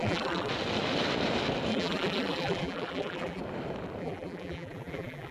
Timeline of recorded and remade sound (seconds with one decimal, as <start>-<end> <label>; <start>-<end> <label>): 0.0-0.5 remade; 0.5-1.7 recorded; 1.7-3.4 remade; 3.4-4.0 recorded; 4.0-5.3 remade